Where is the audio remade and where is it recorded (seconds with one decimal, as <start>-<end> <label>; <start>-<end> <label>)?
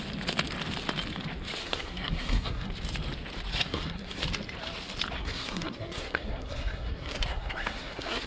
0.0-1.6 recorded; 1.6-2.7 remade; 2.7-3.5 recorded; 3.5-4.2 remade; 4.2-5.2 recorded; 5.2-8.3 remade